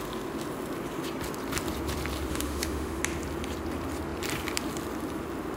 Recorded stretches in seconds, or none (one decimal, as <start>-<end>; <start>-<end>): 0.0-2.3; 3.0-5.6